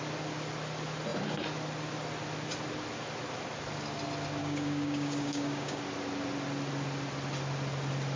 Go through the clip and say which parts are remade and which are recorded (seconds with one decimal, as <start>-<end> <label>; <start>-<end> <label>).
0.0-4.4 recorded; 4.4-5.8 remade; 5.8-8.2 recorded